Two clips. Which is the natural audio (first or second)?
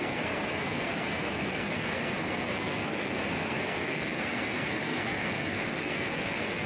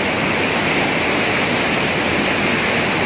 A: second